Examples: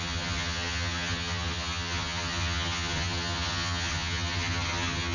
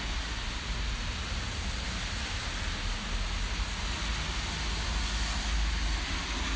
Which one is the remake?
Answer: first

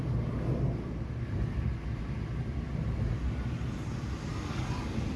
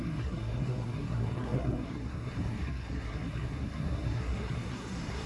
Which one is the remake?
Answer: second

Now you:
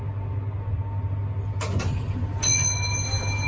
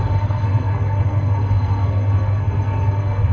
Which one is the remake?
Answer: second